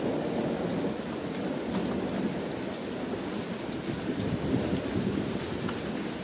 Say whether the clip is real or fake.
real